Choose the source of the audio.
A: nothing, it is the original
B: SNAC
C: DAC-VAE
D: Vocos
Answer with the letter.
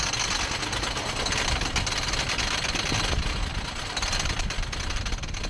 A